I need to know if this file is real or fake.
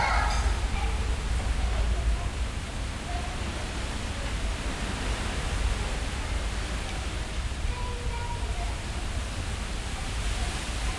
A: real